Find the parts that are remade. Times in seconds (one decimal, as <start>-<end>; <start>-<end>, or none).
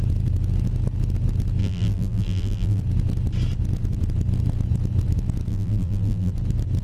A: 1.6-2.8; 5.5-6.3